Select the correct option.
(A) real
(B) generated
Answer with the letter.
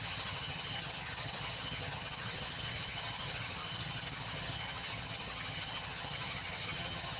B